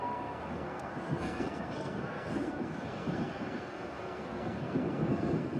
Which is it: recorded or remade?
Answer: remade